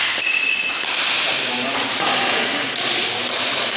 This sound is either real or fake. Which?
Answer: real